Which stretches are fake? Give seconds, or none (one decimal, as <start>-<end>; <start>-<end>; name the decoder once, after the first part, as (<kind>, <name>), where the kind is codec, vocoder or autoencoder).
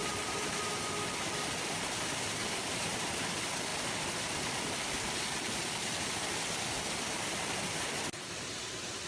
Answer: 0.0-0.7 (vocoder, BigVGAN v2); 2.4-3.3